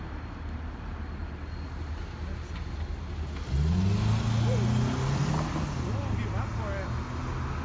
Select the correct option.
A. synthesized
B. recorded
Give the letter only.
B